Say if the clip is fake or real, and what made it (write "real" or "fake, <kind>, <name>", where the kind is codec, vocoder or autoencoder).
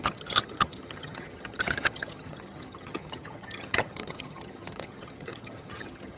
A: fake, vocoder, HiFi-GAN